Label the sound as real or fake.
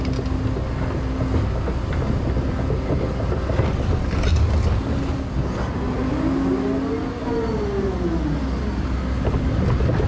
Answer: real